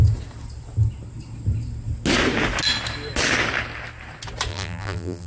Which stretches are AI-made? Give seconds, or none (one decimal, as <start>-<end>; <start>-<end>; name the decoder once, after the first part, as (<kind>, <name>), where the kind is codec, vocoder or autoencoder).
4.5-5.3 (vocoder, BigVGAN v2)